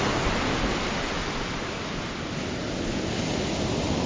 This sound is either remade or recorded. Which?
recorded